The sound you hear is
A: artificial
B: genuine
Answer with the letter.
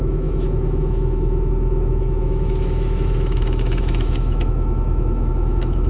A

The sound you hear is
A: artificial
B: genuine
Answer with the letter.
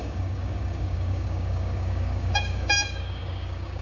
A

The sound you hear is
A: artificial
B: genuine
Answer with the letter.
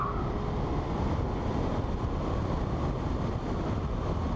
B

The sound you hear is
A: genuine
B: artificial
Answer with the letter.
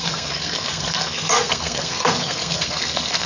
B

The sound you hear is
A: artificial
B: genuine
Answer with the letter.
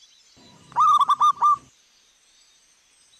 B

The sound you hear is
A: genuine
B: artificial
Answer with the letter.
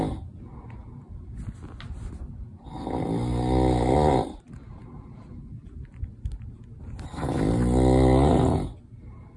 A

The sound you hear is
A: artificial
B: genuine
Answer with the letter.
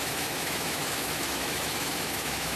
A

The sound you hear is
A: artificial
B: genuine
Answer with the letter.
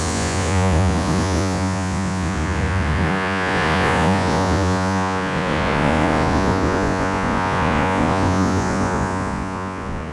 A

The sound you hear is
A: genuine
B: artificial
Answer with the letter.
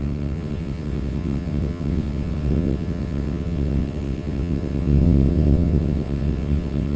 B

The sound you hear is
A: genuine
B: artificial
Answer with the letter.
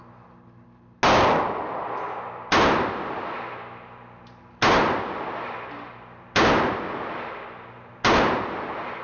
A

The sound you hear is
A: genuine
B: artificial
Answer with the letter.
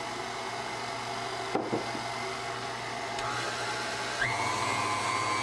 A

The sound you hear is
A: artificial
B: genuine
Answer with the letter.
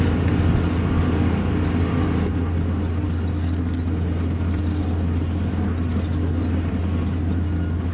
B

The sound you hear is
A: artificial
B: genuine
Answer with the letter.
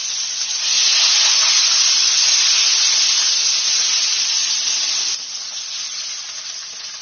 B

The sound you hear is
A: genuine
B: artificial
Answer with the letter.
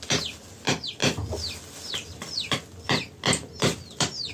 A